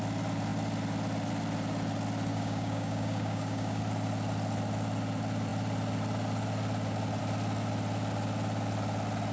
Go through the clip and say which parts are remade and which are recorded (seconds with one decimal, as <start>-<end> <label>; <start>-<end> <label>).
0.0-2.3 recorded; 2.3-3.8 remade; 3.8-9.3 recorded